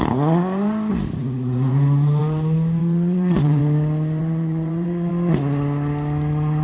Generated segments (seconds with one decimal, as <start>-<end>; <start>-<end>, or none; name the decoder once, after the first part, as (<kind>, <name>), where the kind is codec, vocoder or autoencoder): 2.8-3.6 (vocoder, WaveNeXt); 4.2-5.1